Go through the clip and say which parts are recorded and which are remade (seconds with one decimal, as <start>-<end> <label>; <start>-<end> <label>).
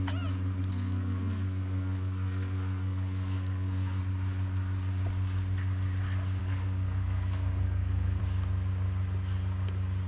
0.0-0.7 recorded; 0.7-4.0 remade; 4.0-6.4 recorded; 6.4-8.2 remade; 8.2-10.1 recorded